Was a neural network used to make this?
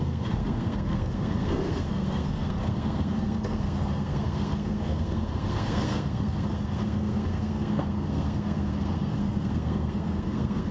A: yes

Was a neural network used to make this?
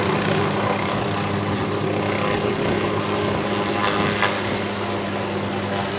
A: no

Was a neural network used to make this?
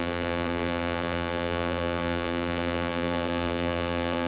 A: yes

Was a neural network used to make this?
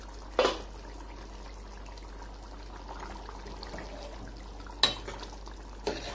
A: no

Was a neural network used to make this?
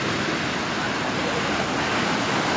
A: no